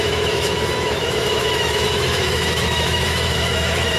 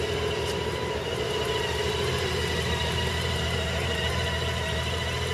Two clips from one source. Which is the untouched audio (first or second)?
second